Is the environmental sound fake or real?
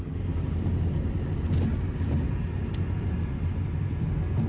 real